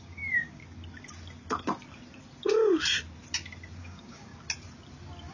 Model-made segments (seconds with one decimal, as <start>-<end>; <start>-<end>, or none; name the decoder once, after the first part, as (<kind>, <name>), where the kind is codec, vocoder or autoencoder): 0.0-0.6 (codec, DAC); 3.8-4.3